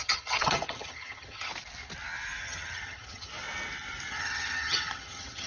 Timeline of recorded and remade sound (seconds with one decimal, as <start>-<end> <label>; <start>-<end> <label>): 0.0-1.5 remade; 1.5-2.4 recorded; 2.4-3.3 remade; 3.3-4.1 recorded; 4.1-5.5 remade